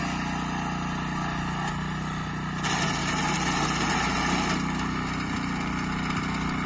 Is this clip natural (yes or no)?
yes